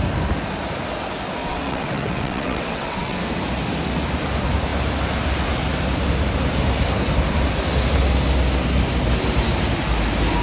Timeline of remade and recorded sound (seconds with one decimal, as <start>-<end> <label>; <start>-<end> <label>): 0.0-1.4 recorded; 1.4-3.2 remade; 3.2-10.4 recorded